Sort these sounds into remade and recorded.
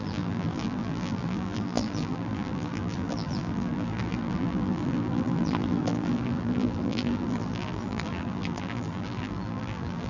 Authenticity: remade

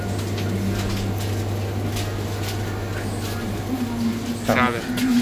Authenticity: recorded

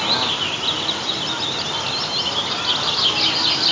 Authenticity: recorded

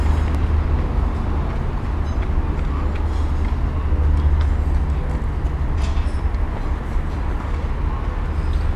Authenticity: recorded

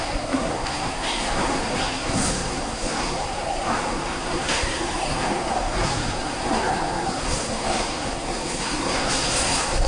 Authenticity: remade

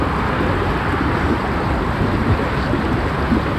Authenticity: recorded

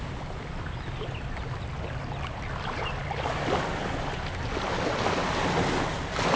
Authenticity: recorded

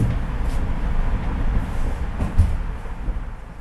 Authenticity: recorded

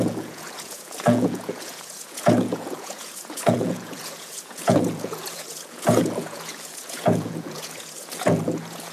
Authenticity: remade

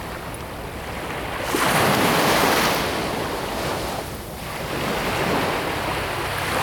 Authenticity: recorded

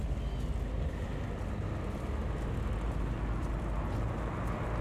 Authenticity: recorded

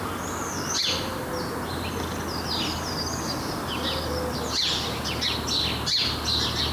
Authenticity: recorded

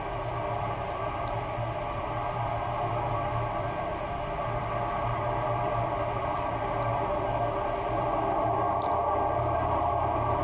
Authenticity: remade